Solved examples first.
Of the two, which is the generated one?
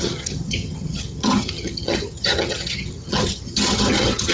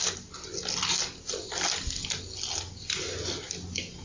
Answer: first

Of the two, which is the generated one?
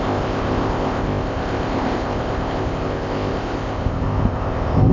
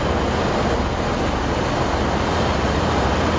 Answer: first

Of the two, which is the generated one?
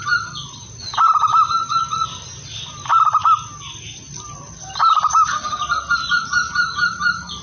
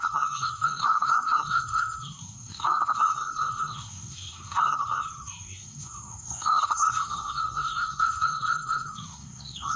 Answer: second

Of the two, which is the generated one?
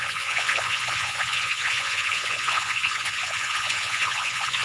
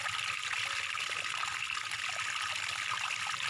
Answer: first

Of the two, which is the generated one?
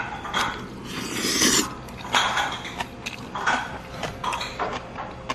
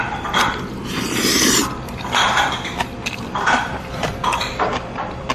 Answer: second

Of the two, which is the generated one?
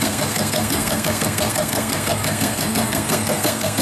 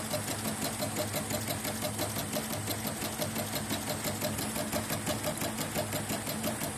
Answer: first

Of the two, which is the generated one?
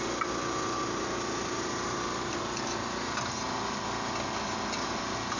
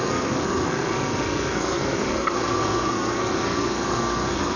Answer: second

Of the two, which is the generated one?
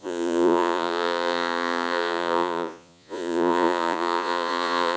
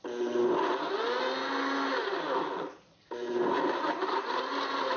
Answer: first